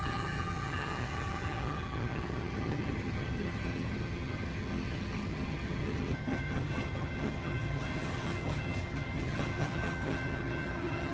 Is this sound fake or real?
fake